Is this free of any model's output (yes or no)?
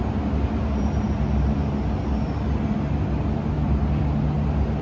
yes